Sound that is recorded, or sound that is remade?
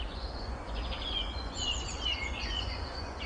remade